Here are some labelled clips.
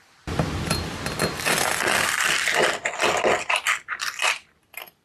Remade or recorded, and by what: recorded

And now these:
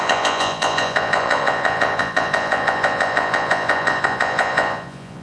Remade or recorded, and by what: remade, vocoder, Vocos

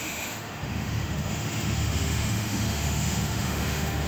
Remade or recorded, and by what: remade, autoencoder, DAC-VAE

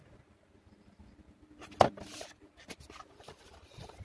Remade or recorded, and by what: recorded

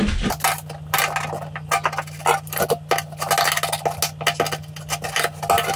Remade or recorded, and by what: recorded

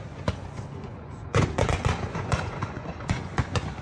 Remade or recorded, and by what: remade, vocoder, Vocos